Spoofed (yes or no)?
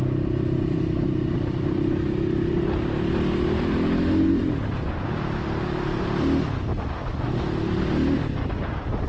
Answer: no